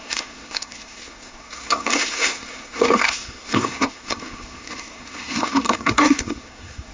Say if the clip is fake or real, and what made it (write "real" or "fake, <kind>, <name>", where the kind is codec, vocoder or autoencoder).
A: fake, codec, SNAC